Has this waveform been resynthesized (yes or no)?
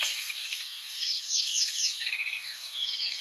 yes